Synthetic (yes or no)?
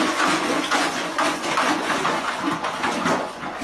yes